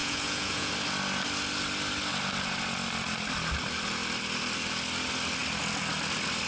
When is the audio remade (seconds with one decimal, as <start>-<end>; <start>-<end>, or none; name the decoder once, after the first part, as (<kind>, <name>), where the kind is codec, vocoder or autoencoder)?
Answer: 0.0-0.7 (vocoder, Vocos)